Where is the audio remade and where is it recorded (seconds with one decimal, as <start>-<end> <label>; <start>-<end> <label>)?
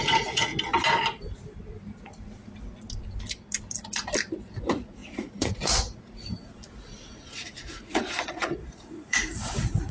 0.0-0.5 remade; 0.5-4.6 recorded; 4.6-9.9 remade